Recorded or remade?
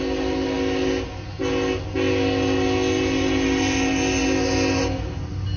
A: recorded